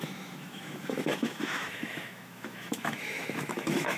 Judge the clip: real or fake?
fake